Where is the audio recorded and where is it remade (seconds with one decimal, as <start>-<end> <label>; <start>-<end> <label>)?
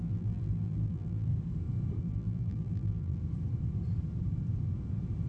0.0-1.3 remade; 1.3-2.0 recorded; 2.0-3.2 remade; 3.2-5.3 recorded